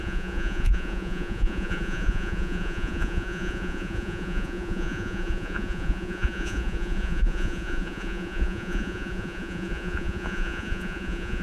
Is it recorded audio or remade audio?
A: remade